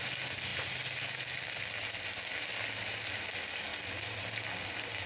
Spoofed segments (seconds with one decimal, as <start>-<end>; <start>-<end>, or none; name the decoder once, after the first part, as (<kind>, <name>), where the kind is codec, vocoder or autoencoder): none